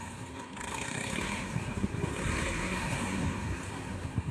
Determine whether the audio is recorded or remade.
remade